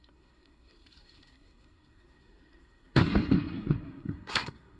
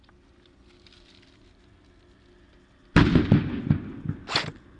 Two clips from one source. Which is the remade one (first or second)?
first